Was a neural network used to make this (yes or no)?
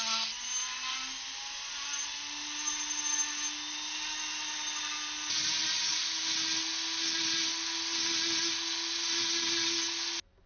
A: no